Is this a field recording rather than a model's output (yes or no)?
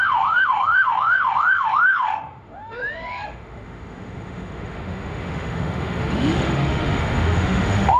no